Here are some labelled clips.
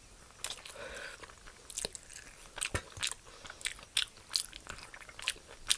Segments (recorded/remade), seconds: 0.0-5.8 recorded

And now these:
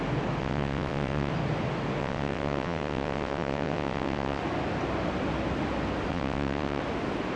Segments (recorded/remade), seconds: 0.0-0.4 recorded; 0.4-1.3 remade; 1.3-2.0 recorded; 2.0-4.4 remade; 4.4-6.1 recorded; 6.1-6.8 remade; 6.8-7.4 recorded